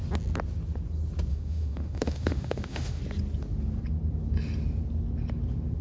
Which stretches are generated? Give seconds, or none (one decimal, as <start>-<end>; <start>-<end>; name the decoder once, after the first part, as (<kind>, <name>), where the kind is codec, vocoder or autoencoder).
1.3-3.0 (autoencoder, DAC-VAE)